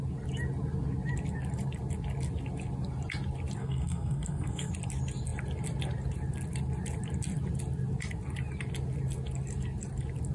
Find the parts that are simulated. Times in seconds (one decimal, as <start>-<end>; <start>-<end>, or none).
3.6-4.7